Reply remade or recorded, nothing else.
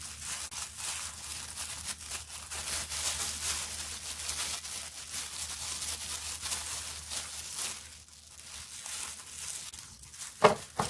recorded